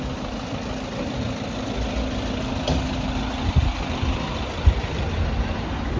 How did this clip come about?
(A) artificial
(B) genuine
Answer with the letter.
B